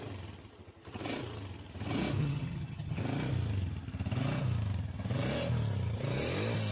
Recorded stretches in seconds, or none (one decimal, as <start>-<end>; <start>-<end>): 0.0-2.2; 3.0-6.7